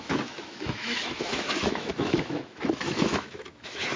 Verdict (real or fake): fake